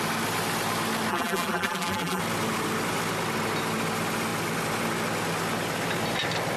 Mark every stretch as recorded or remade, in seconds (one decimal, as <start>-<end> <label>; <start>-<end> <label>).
0.0-1.1 recorded; 1.1-2.2 remade; 2.2-6.6 recorded